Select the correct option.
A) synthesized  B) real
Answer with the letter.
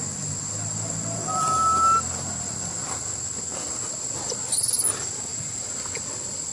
B